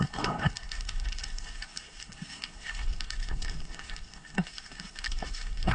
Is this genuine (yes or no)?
no